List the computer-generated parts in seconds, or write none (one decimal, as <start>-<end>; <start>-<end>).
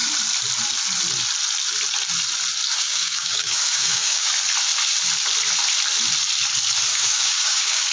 2.8-4.3; 6.9-7.9